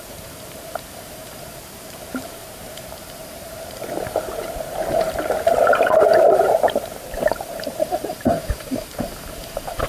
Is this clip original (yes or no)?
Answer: no